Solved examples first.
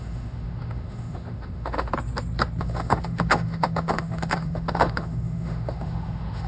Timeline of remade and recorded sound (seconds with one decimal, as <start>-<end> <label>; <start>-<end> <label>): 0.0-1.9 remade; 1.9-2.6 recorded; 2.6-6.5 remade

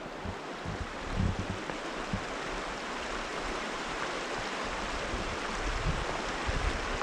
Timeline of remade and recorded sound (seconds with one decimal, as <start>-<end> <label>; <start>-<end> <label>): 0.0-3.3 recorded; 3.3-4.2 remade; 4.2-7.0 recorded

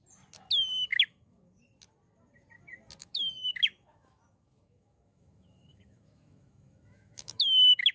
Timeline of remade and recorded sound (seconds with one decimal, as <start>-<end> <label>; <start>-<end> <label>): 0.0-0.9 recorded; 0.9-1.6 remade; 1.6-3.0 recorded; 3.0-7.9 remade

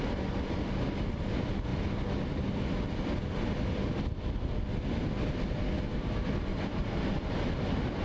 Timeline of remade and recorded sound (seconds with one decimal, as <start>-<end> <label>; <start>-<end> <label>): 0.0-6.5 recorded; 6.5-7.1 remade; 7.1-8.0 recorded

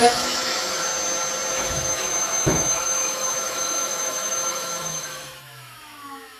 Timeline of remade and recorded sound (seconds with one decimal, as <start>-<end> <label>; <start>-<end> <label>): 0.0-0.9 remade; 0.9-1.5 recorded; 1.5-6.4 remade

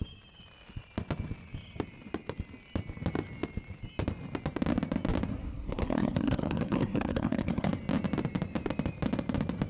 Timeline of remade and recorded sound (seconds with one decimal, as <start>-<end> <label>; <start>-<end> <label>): 0.0-5.3 recorded; 5.3-7.7 remade; 7.7-9.7 recorded